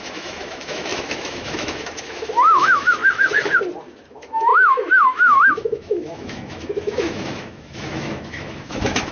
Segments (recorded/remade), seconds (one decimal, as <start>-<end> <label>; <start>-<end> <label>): 0.0-3.0 remade; 3.0-4.1 recorded; 4.1-9.1 remade